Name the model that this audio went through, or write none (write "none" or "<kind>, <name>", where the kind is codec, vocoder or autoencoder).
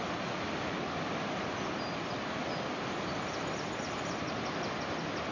none